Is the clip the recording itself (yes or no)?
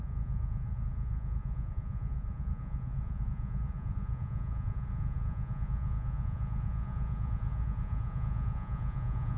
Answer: no